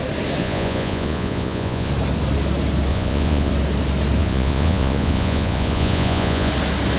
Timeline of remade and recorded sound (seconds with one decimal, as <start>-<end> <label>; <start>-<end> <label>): 0.0-0.4 recorded; 0.4-1.9 remade; 1.9-2.9 recorded; 2.9-3.5 remade; 3.5-4.2 recorded; 4.2-6.5 remade; 6.5-7.0 recorded